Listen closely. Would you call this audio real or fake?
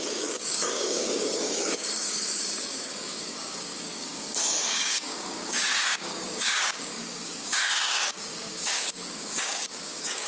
fake